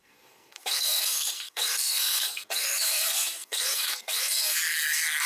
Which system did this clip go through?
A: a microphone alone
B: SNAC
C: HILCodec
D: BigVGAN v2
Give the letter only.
B